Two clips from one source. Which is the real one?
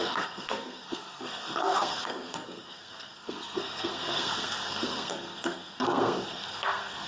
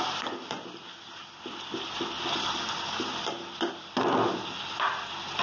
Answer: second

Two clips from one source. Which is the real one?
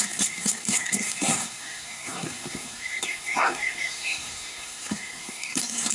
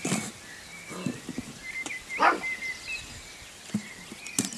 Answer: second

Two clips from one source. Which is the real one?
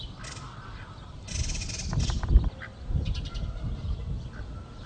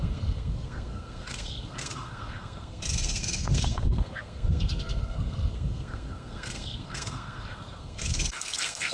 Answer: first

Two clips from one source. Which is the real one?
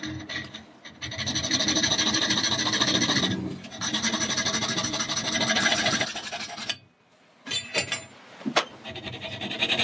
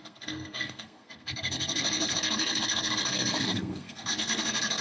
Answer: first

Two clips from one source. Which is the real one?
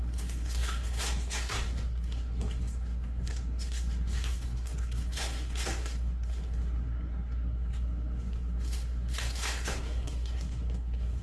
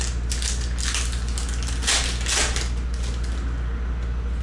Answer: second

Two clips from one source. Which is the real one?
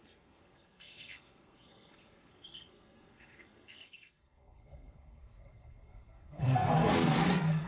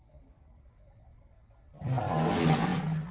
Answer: second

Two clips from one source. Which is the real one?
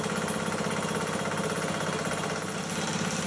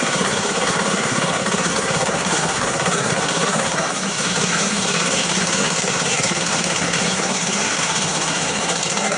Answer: first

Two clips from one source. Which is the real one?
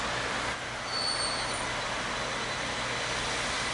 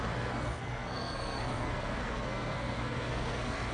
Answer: first